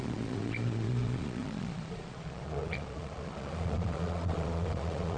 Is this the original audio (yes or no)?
no